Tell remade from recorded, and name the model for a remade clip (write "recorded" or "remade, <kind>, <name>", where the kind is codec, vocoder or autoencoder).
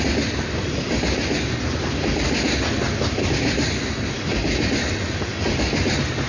recorded